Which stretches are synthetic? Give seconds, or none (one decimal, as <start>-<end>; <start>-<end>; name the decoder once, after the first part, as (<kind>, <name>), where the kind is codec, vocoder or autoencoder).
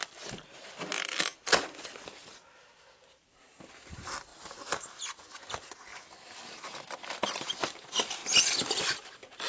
none